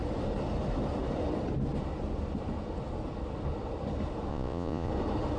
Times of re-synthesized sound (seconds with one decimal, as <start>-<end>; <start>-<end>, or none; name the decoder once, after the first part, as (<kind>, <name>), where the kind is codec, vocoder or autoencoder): 4.3-4.9 (vocoder, Vocos)